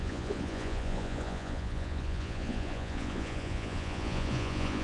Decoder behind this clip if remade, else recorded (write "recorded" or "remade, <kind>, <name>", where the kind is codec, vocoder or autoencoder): remade, vocoder, Vocos